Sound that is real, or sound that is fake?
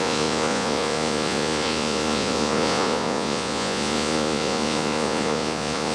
fake